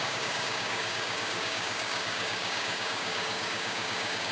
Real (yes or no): no